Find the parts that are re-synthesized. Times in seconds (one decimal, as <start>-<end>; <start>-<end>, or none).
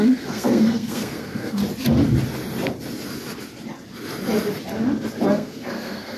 0.0-1.6; 5.3-6.2